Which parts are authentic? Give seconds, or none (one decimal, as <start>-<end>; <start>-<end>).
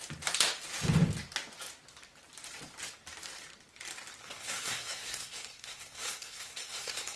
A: 0.0-4.2